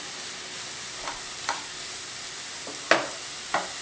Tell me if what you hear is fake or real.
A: real